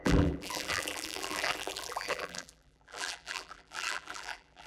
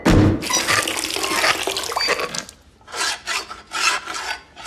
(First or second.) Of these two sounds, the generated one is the first